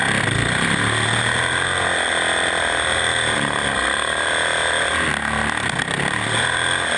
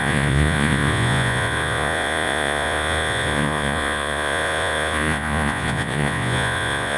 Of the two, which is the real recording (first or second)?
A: first